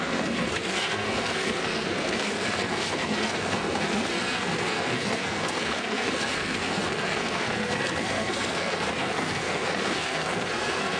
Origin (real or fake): fake